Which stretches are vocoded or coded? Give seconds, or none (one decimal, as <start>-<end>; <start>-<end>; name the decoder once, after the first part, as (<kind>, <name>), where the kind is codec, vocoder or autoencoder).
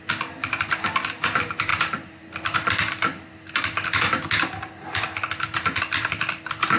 none